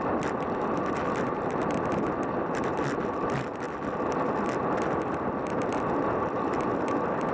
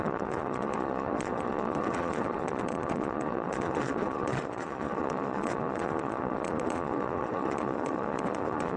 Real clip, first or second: first